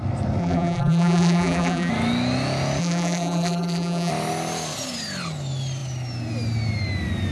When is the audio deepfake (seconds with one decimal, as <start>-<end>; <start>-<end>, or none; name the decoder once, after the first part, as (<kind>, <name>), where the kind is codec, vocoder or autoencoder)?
0.4-1.9 (vocoder, BigVGAN v2); 2.8-4.1